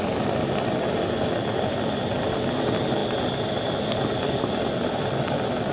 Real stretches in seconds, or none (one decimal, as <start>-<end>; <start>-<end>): 0.0-5.7